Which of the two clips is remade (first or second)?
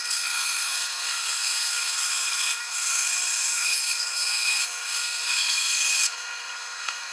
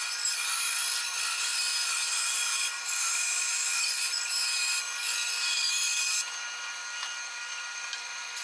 first